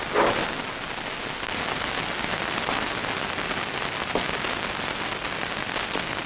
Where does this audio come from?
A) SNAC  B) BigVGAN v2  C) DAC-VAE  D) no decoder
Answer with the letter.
D